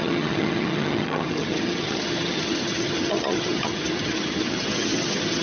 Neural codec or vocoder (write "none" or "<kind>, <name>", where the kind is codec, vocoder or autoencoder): vocoder, HiFi-GAN